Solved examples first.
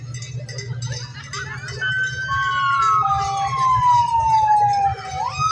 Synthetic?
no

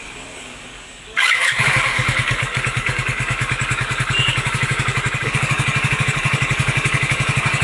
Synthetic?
yes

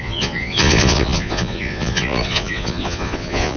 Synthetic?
yes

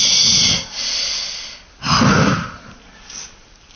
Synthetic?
no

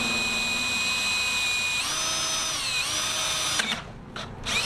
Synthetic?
no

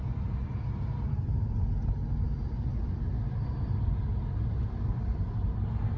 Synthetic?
no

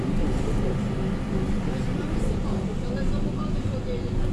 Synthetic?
no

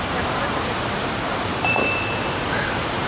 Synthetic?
yes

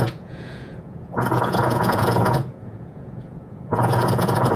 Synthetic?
yes